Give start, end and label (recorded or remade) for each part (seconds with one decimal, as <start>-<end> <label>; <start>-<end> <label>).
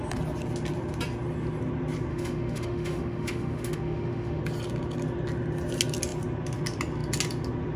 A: 0.0-2.1 recorded; 2.1-4.4 remade; 4.4-7.8 recorded